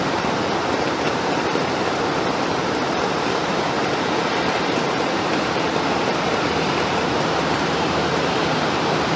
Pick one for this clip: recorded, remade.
remade